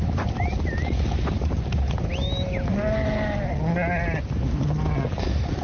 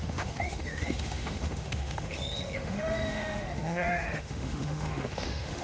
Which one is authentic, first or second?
first